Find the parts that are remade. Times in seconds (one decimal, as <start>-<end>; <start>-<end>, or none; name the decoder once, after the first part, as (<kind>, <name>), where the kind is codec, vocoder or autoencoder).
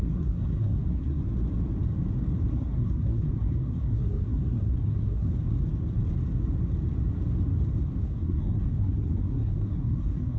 0.0-1.2 (codec, SNAC); 2.5-5.3; 8.0-10.4